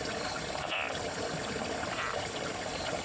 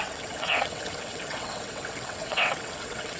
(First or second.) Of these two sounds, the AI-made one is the second